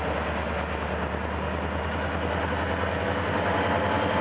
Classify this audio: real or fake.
real